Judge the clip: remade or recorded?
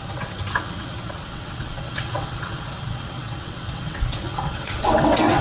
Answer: remade